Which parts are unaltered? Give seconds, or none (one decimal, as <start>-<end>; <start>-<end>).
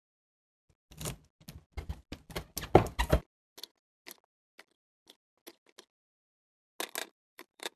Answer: 0.0-7.0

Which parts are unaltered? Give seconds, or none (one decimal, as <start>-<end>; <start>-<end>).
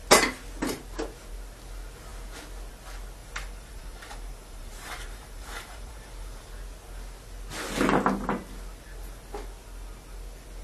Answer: 0.0-3.2; 6.5-10.6